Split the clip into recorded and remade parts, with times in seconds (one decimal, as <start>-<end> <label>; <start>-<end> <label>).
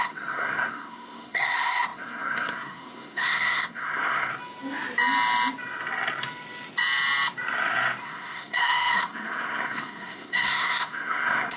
0.0-4.3 remade; 4.3-8.0 recorded; 8.0-11.6 remade